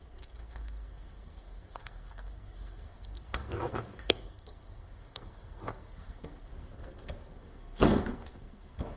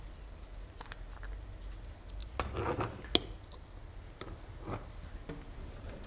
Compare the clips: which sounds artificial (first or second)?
first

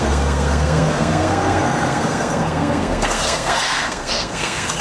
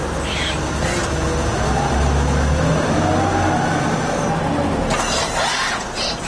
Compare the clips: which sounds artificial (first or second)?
first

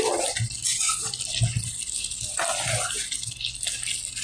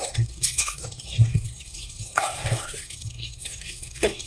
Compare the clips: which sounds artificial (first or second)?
second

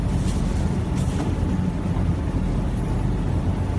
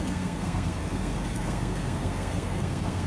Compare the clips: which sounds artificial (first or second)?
second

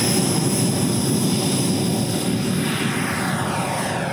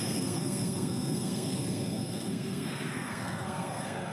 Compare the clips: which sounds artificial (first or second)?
second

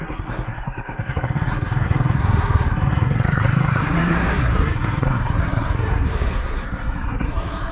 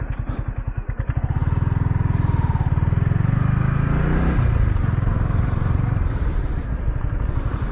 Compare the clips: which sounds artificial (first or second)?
first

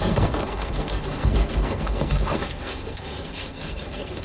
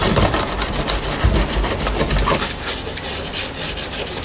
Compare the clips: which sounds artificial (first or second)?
first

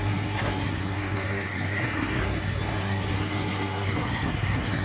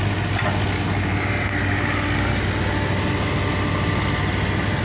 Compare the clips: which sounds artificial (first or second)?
first